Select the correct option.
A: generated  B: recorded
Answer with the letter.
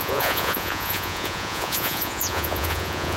A